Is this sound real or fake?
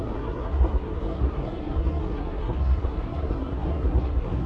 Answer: fake